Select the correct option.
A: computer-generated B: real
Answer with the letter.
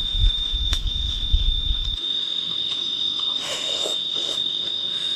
A